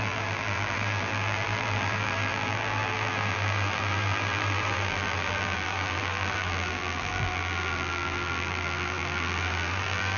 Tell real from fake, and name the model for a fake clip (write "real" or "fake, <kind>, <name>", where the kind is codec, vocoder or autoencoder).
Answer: fake, vocoder, BigVGAN v2